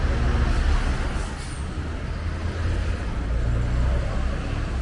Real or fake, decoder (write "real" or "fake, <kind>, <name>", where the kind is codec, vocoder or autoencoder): real